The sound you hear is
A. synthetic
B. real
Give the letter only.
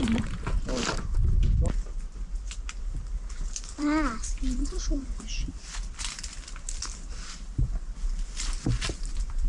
A